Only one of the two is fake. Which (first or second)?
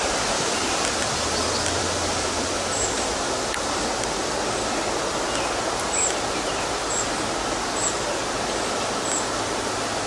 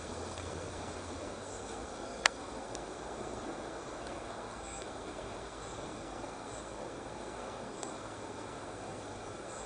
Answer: second